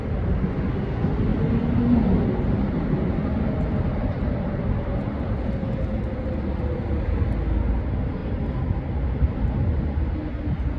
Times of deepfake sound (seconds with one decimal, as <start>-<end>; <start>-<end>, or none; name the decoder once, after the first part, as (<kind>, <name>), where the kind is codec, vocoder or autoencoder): none